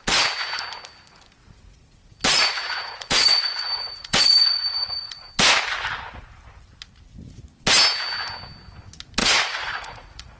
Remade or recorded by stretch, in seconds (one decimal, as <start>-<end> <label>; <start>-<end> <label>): 0.0-1.4 recorded; 1.4-5.3 remade; 5.3-9.2 recorded; 9.2-10.4 remade